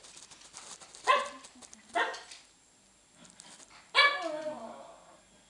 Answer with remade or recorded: recorded